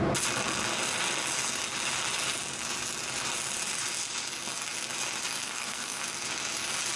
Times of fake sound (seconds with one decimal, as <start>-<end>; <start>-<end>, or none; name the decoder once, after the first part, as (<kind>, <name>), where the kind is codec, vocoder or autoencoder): 5.4-6.0 (codec, SNAC)